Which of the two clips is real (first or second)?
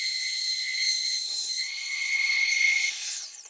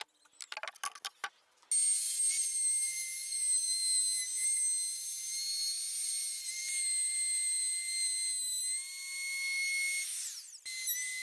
second